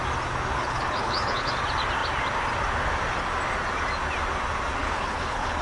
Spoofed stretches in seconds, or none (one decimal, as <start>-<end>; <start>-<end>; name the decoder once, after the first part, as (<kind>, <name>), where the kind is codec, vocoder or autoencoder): 0.6-1.5 (codec, HILCodec); 4.8-5.6